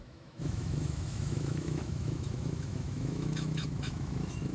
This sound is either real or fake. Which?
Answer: fake